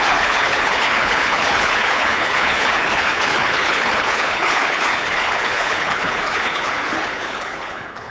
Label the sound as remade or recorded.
remade